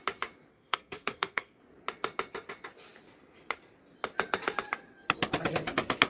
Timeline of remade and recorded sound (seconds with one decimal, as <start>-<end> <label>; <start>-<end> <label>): 0.0-0.5 recorded; 0.5-1.6 remade; 1.6-6.1 recorded